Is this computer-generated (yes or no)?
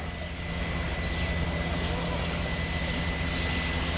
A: no